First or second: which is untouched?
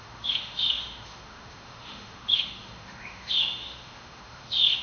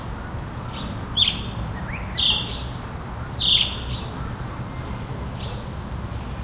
second